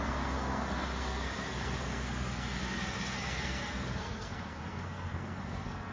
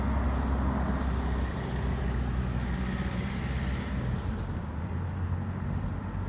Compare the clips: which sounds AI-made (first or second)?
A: first